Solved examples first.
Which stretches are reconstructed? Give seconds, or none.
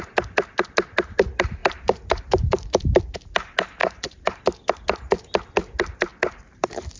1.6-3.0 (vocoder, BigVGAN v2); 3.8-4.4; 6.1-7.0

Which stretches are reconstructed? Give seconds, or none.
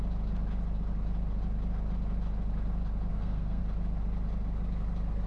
3.1-3.6 (codec, SNAC)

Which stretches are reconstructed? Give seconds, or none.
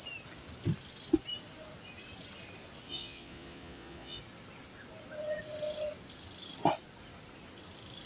2.9-4.2 (vocoder, Vocos)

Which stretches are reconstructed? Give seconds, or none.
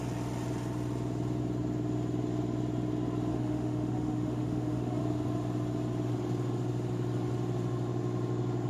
3.3-5.0 (autoencoder, DAC-VAE)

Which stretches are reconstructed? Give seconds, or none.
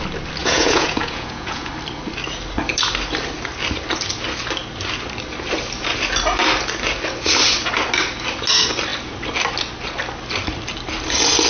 0.4-1.7 (vocoder, Vocos)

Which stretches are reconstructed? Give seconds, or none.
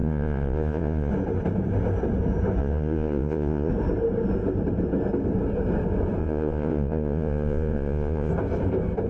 0.0-1.1 (vocoder, Vocos); 2.6-3.7; 6.2-8.3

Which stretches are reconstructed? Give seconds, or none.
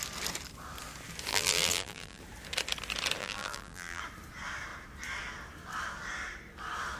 1.3-2.2 (vocoder, BigVGAN v2); 3.2-4.0